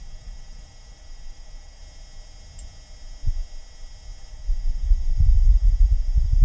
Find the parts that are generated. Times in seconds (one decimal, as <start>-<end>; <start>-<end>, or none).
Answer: 0.0-1.8; 4.3-6.4